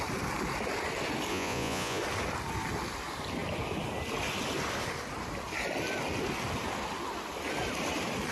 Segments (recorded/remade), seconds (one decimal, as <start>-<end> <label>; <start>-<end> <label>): 0.0-1.3 recorded; 1.3-2.0 remade; 2.0-8.3 recorded